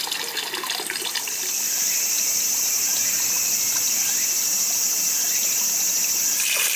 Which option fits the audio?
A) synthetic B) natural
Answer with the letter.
B